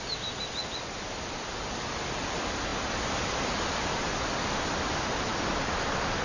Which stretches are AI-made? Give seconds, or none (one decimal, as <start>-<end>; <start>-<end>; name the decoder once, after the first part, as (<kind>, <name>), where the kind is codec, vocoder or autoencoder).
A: 0.6-1.3 (vocoder, BigVGAN v2); 5.3-6.2